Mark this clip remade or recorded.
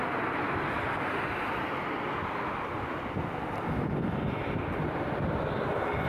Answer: remade